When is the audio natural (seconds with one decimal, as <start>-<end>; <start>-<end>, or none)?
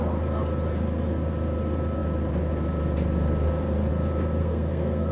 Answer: 0.0-4.4